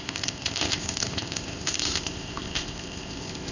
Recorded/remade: remade